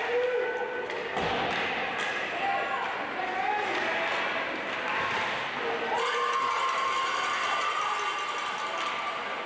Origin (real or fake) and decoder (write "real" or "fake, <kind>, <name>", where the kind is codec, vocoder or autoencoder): real